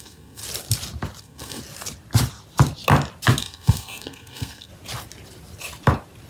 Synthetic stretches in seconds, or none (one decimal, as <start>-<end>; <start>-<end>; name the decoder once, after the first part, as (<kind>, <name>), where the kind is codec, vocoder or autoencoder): 0.0-0.4 (codec, SNAC); 1.2-1.6; 3.4-4.7